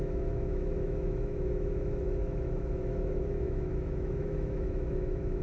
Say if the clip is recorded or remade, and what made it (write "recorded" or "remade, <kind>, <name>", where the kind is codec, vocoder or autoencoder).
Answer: remade, autoencoder, DAC-VAE